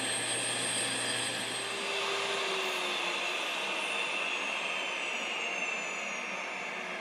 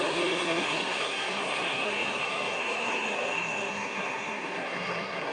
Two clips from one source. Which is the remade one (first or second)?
second